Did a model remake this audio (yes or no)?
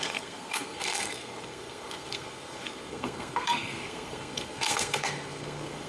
yes